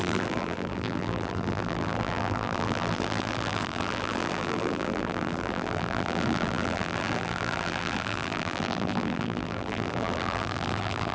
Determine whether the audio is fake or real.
fake